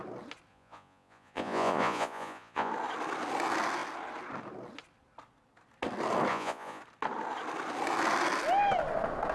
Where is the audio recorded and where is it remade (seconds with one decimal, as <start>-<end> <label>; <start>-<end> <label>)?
0.0-0.5 recorded; 0.5-2.7 remade; 2.7-6.3 recorded; 6.3-6.8 remade; 6.8-9.3 recorded